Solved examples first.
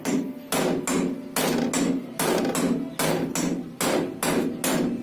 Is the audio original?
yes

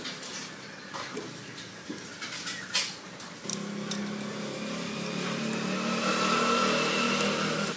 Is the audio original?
yes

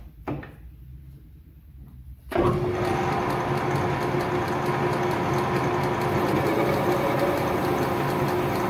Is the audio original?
yes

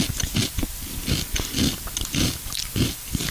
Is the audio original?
yes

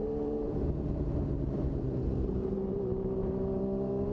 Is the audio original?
no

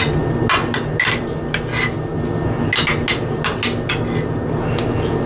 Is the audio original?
yes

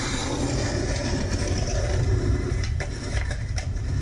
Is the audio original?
no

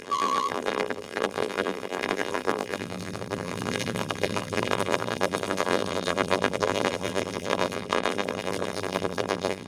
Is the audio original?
no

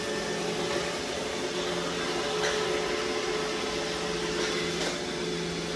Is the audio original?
yes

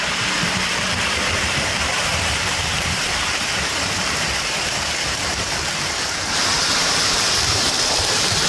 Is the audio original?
no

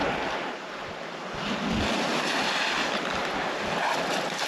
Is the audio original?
yes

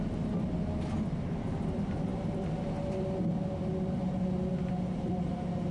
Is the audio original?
yes